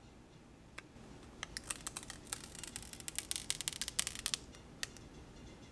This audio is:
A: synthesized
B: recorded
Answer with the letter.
B